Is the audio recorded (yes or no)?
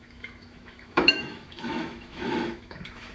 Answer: no